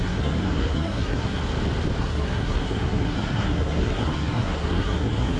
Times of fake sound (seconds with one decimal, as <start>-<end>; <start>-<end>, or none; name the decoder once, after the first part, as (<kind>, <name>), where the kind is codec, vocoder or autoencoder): 0.0-1.4 (codec, SNAC); 2.0-5.4